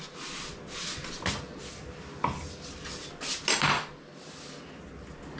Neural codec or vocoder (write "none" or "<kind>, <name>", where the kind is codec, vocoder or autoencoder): none